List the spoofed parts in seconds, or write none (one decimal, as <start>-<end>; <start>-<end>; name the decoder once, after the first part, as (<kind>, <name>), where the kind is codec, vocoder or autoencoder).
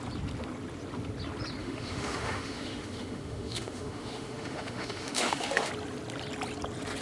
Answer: 1.6-5.7 (autoencoder, DAC-VAE)